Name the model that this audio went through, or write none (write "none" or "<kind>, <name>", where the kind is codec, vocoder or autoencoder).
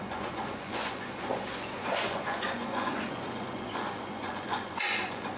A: vocoder, Vocos